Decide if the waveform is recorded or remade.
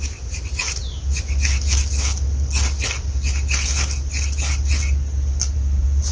recorded